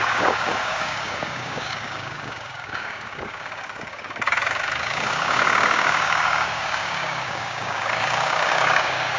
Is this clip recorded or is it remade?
remade